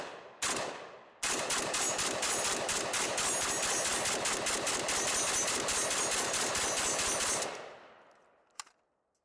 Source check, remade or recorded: recorded